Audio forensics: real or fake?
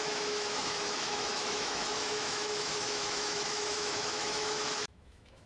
fake